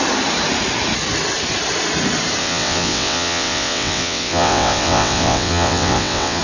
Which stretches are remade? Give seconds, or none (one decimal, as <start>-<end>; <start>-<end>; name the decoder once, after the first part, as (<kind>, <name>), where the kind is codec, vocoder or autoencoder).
2.4-6.4 (vocoder, WaveNeXt)